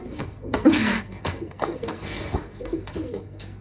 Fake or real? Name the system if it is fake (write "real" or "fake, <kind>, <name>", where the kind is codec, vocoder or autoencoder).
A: fake, codec, SNAC